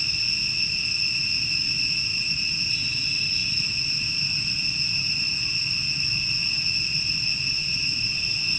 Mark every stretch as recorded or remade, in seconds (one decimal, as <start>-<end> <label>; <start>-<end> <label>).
0.0-2.1 recorded; 2.1-2.7 remade; 2.7-7.6 recorded; 7.6-8.6 remade